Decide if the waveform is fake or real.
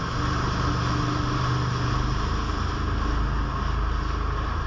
real